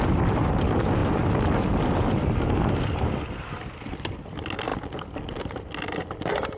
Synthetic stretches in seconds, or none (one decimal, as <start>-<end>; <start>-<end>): none